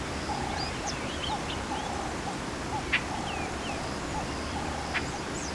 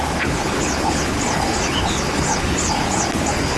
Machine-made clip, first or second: second